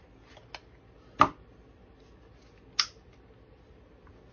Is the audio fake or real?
real